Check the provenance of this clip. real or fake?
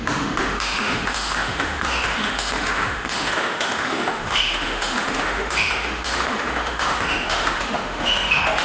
fake